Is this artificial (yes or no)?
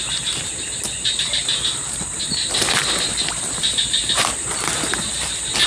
no